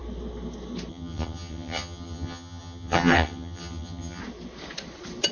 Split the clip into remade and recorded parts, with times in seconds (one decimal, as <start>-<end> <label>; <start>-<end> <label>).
0.0-0.9 recorded; 0.9-4.2 remade; 4.2-5.3 recorded